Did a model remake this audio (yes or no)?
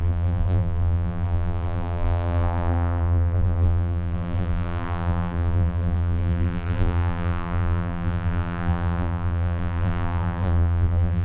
yes